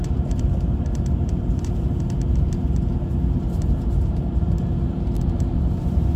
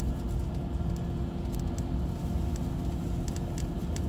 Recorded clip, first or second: second